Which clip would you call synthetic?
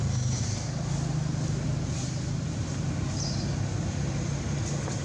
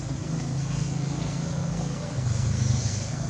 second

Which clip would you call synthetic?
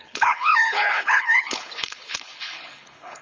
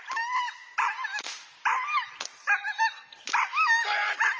first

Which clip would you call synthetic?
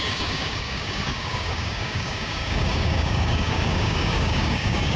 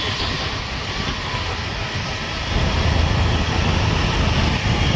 first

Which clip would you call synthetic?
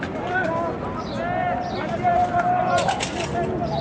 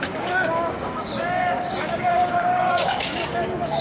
second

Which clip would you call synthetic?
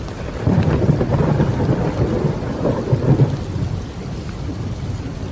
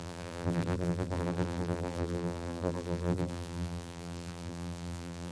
second